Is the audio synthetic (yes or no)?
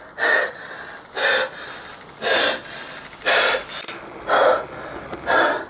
no